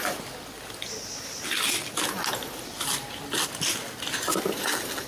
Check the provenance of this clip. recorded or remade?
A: recorded